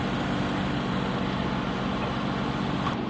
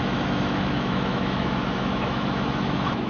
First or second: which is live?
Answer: first